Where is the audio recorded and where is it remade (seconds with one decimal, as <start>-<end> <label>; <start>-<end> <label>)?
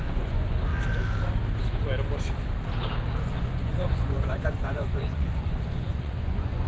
0.0-0.7 remade; 0.7-3.2 recorded; 3.2-6.7 remade